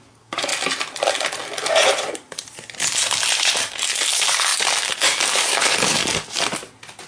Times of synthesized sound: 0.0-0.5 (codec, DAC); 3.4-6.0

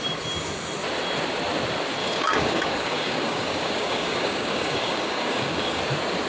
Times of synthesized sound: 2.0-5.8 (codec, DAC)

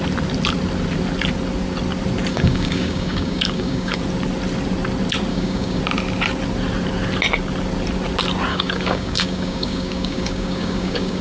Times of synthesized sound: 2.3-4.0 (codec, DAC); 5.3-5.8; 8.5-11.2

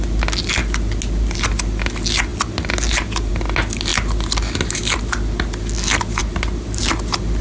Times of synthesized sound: none

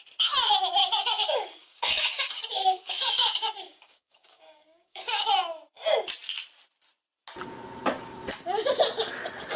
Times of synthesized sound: 0.8-5.3 (codec, DAC)

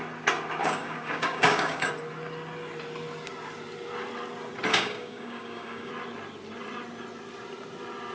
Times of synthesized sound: 0.6-1.9 (codec, DAC); 4.7-5.9

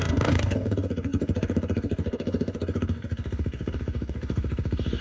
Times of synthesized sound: 0.0-5.0 (codec, DAC)